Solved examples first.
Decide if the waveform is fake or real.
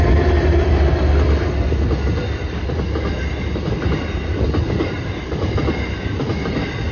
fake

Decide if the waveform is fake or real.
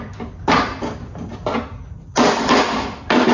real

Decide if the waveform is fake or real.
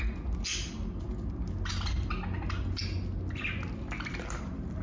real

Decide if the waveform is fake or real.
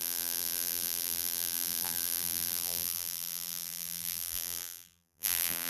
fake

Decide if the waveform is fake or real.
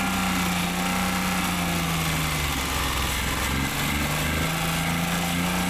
real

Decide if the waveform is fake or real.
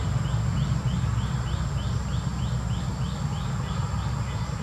real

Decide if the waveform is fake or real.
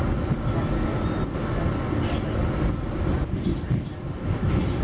real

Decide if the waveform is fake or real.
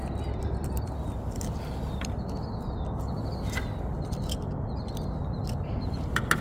real